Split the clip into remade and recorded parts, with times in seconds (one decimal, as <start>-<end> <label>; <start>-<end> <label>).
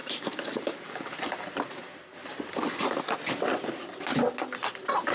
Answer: 0.0-3.0 remade; 3.0-5.1 recorded